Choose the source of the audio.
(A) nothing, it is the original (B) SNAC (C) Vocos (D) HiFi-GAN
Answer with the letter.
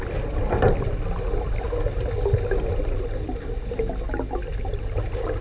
A